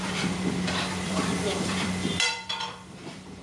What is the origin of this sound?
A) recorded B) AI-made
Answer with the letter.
B